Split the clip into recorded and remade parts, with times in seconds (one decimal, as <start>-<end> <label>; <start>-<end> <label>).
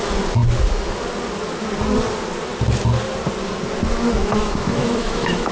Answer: 0.0-4.2 recorded; 4.2-5.5 remade